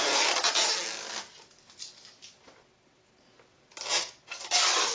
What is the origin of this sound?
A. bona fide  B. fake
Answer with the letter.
A